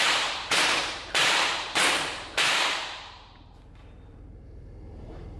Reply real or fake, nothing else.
fake